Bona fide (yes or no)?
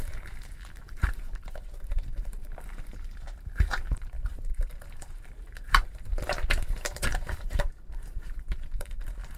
no